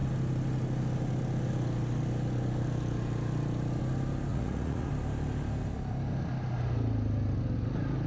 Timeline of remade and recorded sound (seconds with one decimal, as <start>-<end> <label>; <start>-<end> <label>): 0.0-4.3 recorded; 4.3-4.9 remade; 4.9-8.1 recorded